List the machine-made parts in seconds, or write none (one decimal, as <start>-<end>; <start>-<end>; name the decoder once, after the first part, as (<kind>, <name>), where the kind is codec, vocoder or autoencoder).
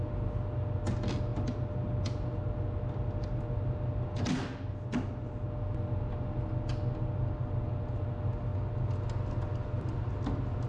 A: none